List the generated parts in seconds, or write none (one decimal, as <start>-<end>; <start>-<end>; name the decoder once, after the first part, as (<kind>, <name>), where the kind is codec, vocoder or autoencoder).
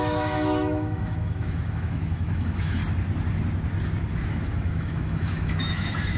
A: 0.0-2.8 (autoencoder, DAC-VAE); 4.3-6.2